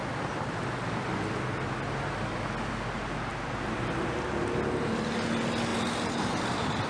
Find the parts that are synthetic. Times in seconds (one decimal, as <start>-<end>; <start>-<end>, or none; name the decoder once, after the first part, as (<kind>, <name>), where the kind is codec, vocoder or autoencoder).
5.7-6.4 (vocoder, BigVGAN v2)

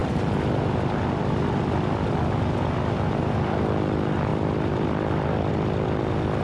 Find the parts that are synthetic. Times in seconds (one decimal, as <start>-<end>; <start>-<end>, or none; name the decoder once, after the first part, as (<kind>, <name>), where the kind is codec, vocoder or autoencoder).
0.0-0.6 (vocoder, BigVGAN v2); 4.3-5.5